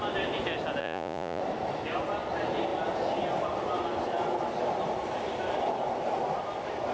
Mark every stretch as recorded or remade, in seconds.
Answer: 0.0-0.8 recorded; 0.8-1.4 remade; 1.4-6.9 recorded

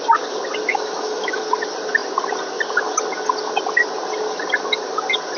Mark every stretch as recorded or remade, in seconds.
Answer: 0.0-0.7 recorded; 0.7-1.4 remade; 1.4-5.4 recorded

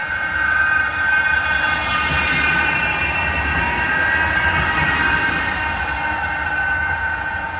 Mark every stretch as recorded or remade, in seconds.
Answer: 0.0-0.6 remade; 0.6-6.8 recorded; 6.8-7.6 remade